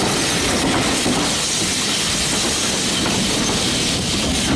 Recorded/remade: recorded